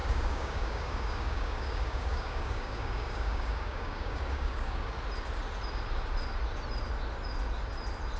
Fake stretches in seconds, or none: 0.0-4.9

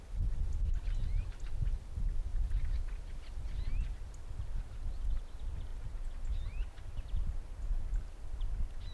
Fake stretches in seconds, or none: none